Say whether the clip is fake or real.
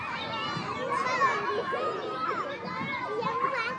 real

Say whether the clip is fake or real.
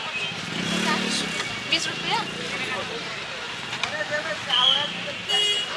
real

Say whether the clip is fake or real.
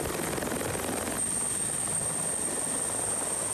real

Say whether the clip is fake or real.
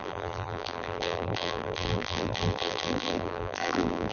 fake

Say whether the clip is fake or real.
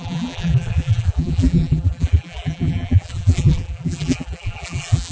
fake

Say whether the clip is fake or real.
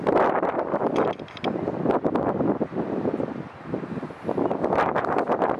real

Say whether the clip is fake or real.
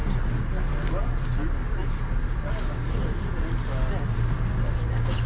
real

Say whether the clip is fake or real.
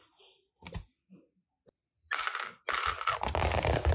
real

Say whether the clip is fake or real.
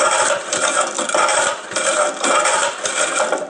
real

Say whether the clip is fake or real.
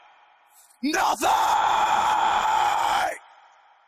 real